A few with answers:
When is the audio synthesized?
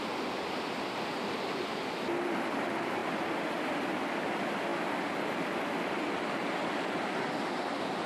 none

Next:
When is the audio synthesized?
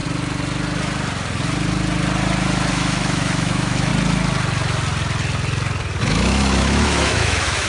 2.7-3.9 (autoencoder, DAC-VAE); 6.0-7.7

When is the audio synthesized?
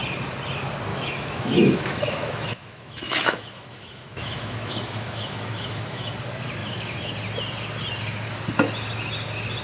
0.9-6.1 (autoencoder, DAC-VAE); 6.6-7.1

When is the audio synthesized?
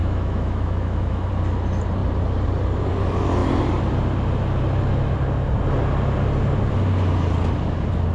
0.0-1.3 (autoencoder, DAC-VAE)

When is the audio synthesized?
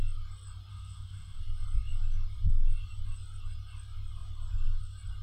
0.7-1.4 (autoencoder, DAC-VAE)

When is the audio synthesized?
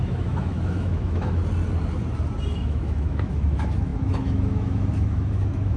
0.0-1.4 (autoencoder, DAC-VAE); 2.5-5.8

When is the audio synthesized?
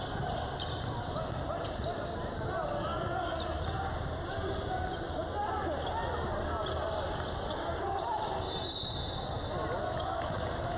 9.8-10.8 (autoencoder, DAC-VAE)